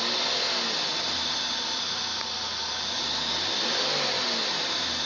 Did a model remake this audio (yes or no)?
no